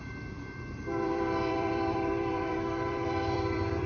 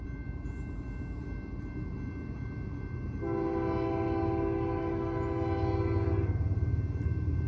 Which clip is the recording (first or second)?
second